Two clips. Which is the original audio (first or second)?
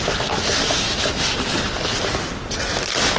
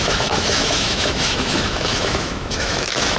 first